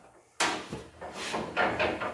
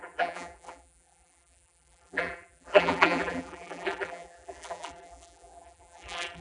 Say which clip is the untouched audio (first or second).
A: first